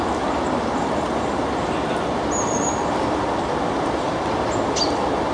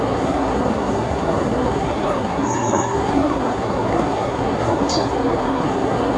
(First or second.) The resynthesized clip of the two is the second